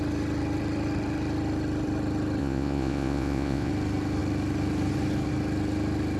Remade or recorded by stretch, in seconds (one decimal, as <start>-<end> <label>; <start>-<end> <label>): 0.0-2.4 recorded; 2.4-3.7 remade; 3.7-6.2 recorded

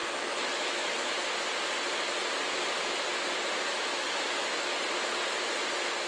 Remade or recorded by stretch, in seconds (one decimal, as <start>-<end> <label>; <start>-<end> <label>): 0.0-1.1 remade; 1.1-3.9 recorded; 3.9-4.7 remade; 4.7-6.1 recorded

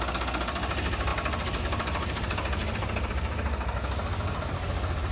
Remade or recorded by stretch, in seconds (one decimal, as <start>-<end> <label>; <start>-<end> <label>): 0.0-5.1 recorded

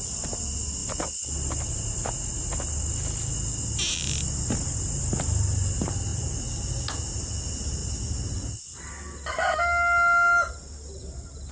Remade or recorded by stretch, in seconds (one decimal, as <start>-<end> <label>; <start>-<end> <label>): 0.0-11.5 recorded

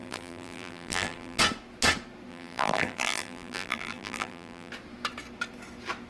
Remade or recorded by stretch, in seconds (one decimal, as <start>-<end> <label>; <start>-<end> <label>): 0.0-1.4 remade; 1.4-2.3 recorded; 2.3-4.7 remade; 4.7-6.1 recorded